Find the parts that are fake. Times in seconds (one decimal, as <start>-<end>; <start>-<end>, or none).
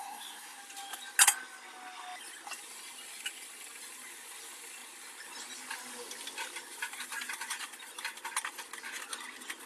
0.0-0.6